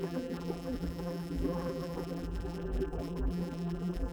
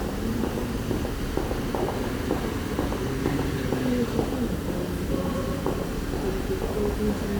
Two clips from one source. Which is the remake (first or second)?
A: first